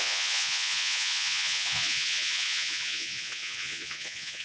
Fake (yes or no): yes